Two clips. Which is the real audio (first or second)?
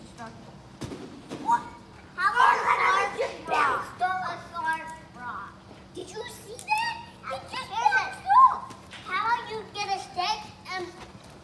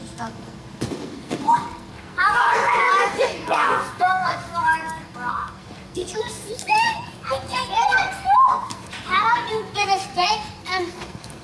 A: first